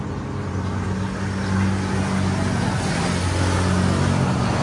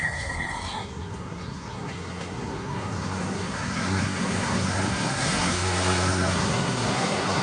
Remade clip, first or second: second